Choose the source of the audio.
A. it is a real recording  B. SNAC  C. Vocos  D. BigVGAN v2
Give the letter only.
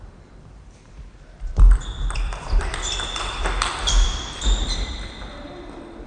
D